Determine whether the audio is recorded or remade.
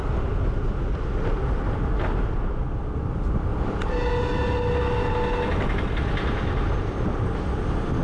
recorded